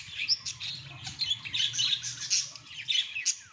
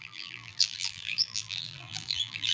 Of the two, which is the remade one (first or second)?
second